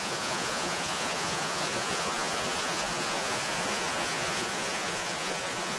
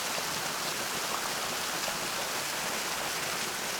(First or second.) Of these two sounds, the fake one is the first